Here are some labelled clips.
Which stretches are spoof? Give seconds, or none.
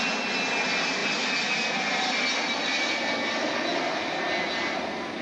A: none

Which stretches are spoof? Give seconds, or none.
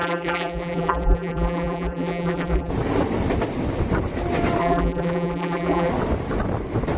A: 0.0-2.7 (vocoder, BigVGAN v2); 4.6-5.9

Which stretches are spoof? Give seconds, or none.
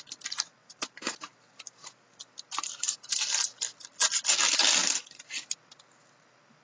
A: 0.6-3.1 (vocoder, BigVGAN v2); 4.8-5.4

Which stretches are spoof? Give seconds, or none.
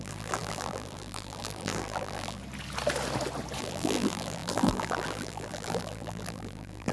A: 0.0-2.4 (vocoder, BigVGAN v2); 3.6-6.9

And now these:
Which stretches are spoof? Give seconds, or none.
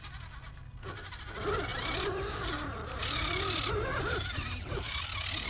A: 1.7-5.0 (vocoder, BigVGAN v2)